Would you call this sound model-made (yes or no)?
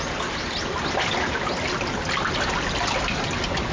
no